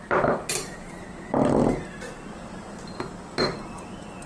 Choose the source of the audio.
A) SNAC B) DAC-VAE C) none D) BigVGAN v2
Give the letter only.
C